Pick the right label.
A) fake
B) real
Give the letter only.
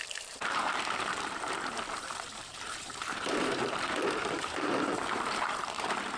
A